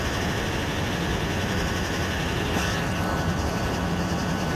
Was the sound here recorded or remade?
recorded